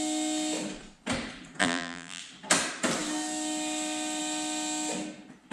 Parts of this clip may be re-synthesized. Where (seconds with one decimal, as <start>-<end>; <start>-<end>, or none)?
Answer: 1.6-2.2